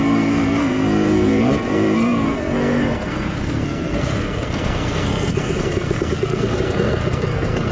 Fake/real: fake